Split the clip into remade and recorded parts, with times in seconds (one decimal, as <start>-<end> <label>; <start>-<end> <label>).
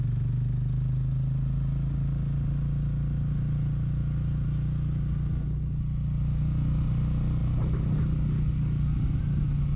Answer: 0.0-9.8 recorded